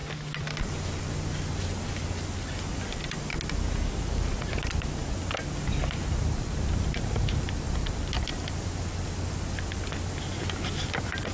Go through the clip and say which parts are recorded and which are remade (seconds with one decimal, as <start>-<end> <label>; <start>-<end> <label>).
0.0-11.3 recorded